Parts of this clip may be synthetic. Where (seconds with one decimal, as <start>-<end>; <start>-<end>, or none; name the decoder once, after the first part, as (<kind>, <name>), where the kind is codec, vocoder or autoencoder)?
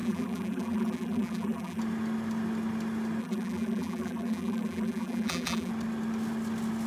0.0-1.8 (vocoder, BigVGAN v2); 3.2-5.7